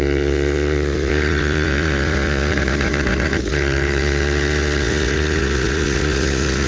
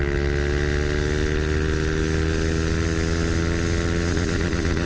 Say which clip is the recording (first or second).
second